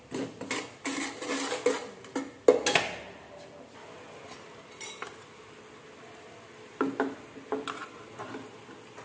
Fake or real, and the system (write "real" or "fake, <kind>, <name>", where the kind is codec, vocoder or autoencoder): real